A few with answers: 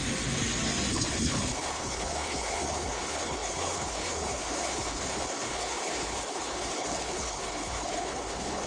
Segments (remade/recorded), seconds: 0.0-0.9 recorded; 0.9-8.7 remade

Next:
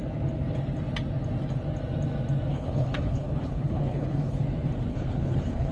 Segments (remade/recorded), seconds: 0.0-2.5 recorded; 2.5-4.4 remade; 4.4-4.9 recorded; 4.9-5.7 remade

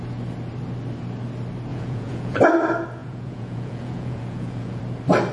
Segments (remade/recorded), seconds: 0.0-1.7 recorded; 1.7-2.4 remade; 2.4-3.0 recorded; 3.0-4.8 remade; 4.8-5.3 recorded

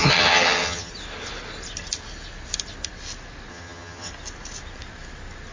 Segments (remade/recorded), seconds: 0.0-0.9 remade; 0.9-3.5 recorded; 3.5-4.1 remade; 4.1-5.5 recorded

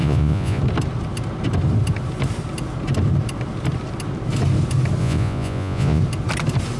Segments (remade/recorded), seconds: 0.0-0.6 remade; 0.6-5.0 recorded; 5.0-6.0 remade; 6.0-6.8 recorded

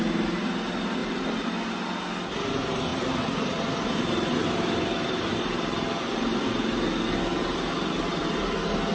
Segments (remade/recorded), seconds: 0.0-1.0 recorded; 1.0-1.5 remade; 1.5-2.9 recorded; 2.9-6.4 remade; 6.4-8.9 recorded

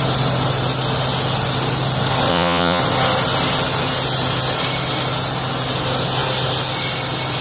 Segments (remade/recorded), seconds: 0.0-2.3 recorded; 2.3-2.8 remade; 2.8-7.4 recorded